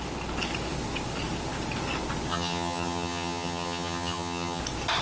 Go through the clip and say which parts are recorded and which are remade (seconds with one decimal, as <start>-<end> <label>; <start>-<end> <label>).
0.0-2.3 recorded; 2.3-4.6 remade; 4.6-5.0 recorded